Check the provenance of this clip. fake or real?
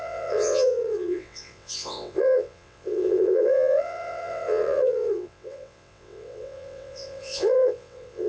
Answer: fake